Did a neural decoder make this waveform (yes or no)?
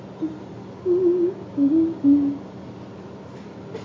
no